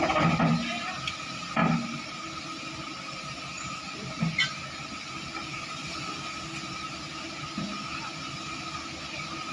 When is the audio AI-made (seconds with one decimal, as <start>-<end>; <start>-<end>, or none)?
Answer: none